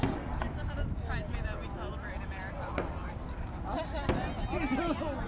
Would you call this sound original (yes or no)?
yes